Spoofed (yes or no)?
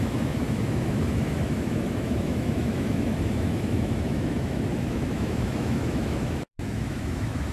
yes